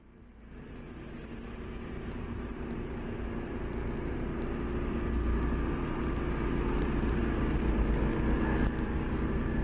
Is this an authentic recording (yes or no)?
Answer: yes